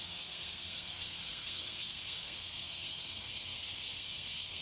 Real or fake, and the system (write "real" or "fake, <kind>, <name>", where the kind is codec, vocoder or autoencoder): fake, codec, SNAC